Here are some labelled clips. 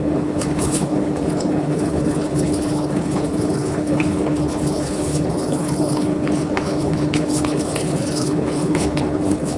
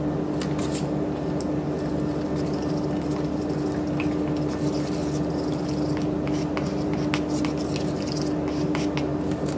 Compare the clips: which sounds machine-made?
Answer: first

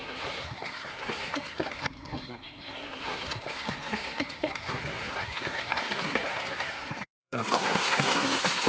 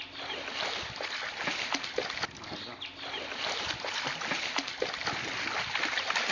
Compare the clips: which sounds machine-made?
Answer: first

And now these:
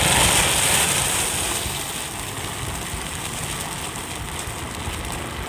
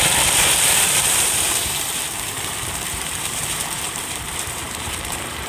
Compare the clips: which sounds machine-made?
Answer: second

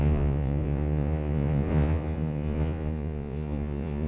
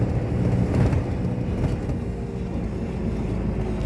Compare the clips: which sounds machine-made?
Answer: first